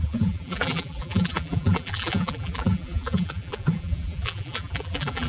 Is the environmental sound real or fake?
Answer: fake